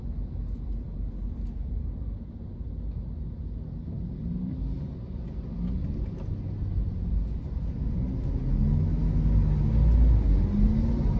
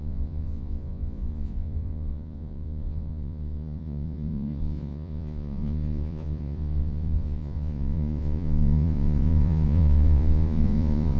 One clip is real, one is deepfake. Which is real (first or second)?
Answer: first